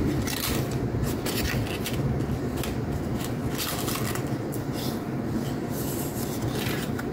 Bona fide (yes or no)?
yes